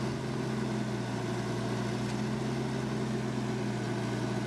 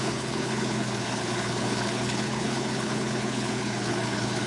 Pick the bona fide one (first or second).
first